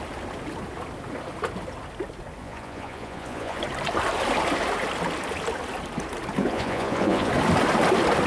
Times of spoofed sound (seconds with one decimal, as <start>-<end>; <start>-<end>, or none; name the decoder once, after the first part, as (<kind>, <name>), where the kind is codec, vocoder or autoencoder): 2.4-3.6 (vocoder, Vocos); 6.4-7.3